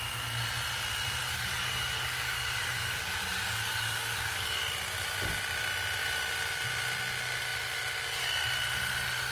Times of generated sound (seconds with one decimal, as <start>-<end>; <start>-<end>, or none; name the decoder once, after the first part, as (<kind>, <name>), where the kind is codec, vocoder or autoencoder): 1.2-4.6 (codec, DAC)